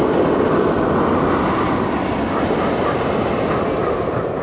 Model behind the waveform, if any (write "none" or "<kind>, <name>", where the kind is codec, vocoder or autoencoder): none